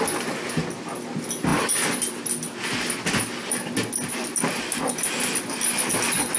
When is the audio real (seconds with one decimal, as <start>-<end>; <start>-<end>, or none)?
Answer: 0.0-6.4